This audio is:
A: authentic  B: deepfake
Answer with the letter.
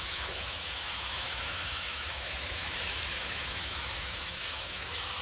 B